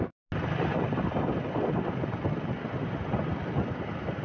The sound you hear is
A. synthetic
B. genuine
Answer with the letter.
B